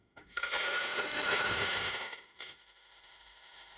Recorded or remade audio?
remade